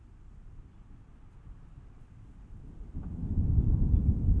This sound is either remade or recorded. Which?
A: recorded